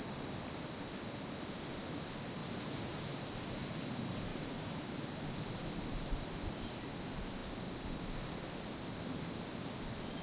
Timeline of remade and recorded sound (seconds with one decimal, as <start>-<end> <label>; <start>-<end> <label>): 0.0-2.4 recorded; 2.4-3.7 remade; 3.7-4.3 recorded; 4.3-5.2 remade; 5.2-10.2 recorded